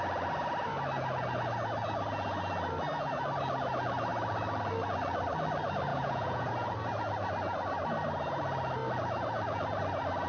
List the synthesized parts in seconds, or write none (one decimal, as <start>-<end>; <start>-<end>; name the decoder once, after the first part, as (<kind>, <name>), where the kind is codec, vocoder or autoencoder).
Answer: 5.9-6.5 (vocoder, Vocos)